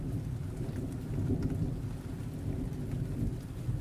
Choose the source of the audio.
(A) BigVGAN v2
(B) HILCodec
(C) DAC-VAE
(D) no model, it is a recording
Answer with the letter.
D